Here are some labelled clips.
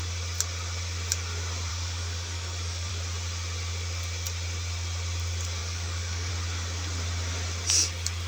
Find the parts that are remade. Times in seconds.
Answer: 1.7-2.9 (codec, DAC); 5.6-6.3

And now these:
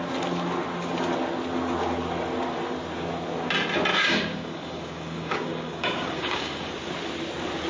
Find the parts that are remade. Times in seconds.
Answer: 3.9-6.7 (codec, DAC)